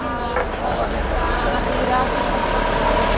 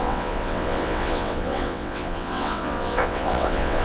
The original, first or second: first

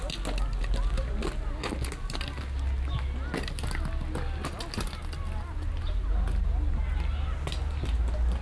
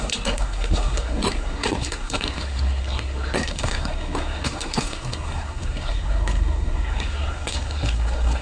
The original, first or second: first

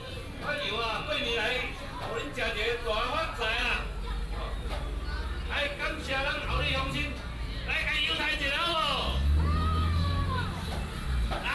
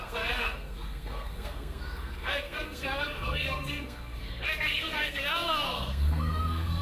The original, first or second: first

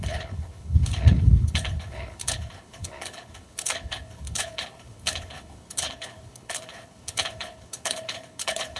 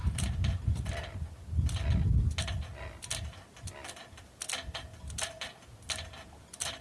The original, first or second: second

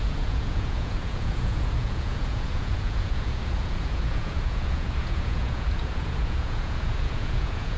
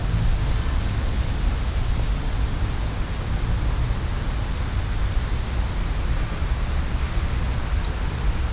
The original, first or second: second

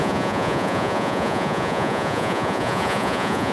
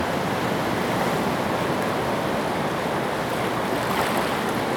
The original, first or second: second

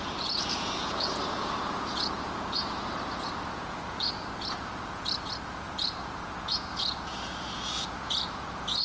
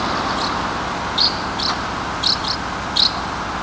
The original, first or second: second